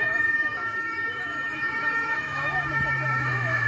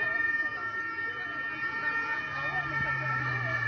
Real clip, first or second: second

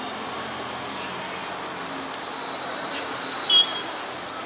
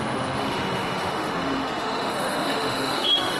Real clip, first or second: first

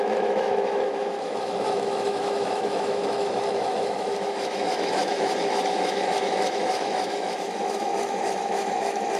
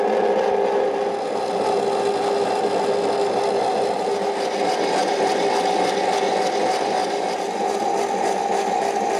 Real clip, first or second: second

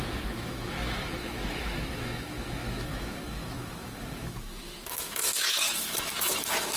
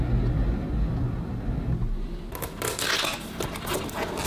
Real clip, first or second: second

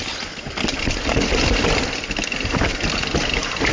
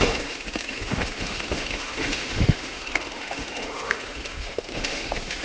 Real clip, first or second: first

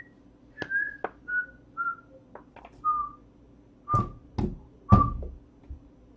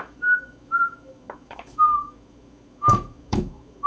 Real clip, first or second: first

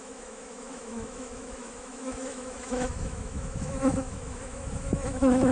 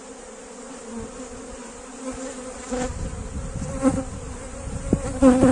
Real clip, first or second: second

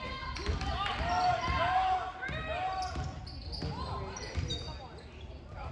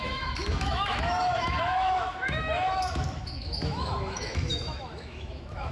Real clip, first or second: first